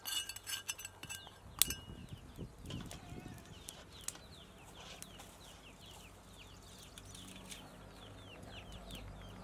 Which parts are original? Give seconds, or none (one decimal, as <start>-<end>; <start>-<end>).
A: 0.0-9.4